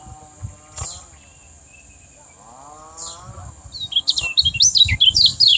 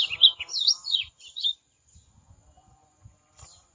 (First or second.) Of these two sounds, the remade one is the second